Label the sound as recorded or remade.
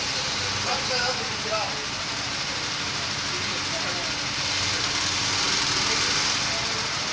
recorded